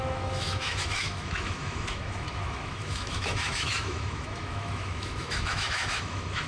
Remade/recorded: remade